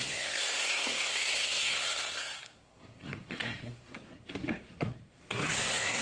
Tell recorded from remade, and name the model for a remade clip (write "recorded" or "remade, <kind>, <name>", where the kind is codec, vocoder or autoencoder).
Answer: remade, codec, SNAC